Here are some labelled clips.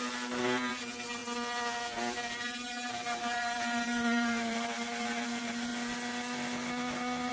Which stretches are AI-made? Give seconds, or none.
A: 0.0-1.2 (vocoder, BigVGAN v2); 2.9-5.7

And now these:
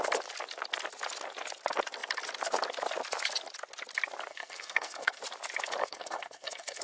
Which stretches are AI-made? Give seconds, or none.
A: 4.3-5.2 (codec, SNAC); 5.8-6.8

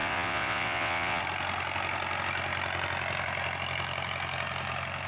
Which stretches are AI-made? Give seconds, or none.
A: 0.0-1.2 (vocoder, WaveNeXt)